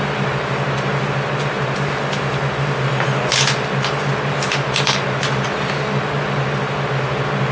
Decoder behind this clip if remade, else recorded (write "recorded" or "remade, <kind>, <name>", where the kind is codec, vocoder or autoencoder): recorded